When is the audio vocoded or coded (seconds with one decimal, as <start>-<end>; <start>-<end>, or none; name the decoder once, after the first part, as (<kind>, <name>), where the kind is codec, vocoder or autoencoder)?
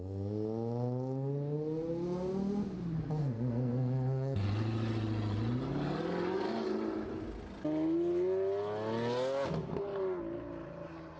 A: 3.2-4.4 (codec, SNAC)